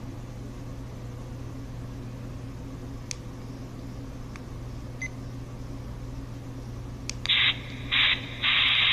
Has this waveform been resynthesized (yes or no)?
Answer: no